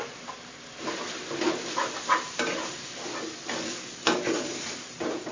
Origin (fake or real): real